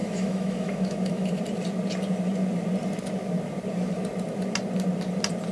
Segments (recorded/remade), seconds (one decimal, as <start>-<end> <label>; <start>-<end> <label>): 0.0-1.4 remade; 1.4-5.5 recorded